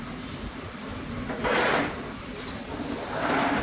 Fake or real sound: fake